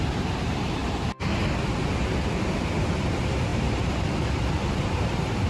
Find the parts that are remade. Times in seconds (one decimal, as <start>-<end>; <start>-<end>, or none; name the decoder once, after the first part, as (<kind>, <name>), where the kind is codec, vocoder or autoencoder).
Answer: 4.6-5.5 (vocoder, BigVGAN v2)